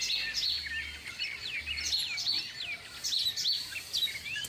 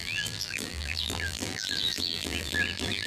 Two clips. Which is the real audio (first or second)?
first